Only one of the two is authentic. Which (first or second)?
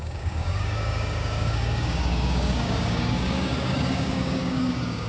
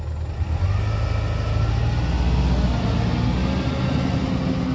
second